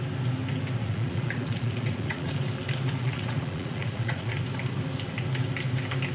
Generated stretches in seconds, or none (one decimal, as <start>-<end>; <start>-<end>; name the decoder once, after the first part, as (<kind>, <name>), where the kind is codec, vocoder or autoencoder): 0.8-2.3 (vocoder, Vocos); 3.0-4.3